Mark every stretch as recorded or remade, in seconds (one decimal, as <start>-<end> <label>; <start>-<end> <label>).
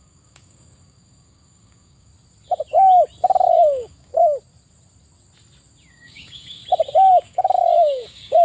0.0-2.1 remade; 2.1-3.5 recorded; 3.5-4.1 remade; 4.1-5.9 recorded; 5.9-6.6 remade; 6.6-7.1 recorded; 7.1-8.4 remade